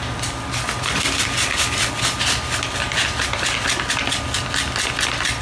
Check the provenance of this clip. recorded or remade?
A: recorded